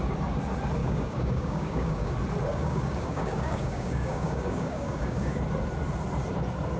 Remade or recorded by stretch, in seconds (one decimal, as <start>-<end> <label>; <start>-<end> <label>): 0.0-0.8 recorded; 0.8-2.1 remade; 2.1-2.5 recorded; 2.5-5.4 remade; 5.4-6.8 recorded